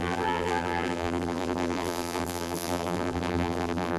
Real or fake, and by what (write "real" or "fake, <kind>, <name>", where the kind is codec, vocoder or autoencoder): fake, vocoder, BigVGAN v2